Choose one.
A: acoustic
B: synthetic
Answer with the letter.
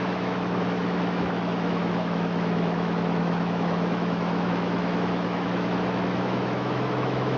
B